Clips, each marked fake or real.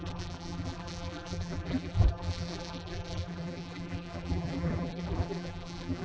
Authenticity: fake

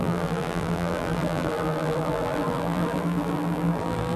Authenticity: fake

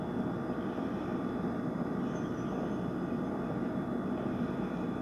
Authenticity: real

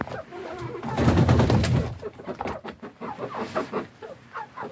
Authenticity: real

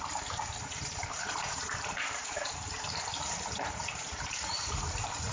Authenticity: fake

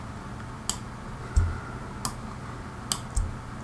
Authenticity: real